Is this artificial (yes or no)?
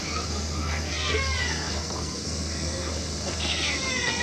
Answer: yes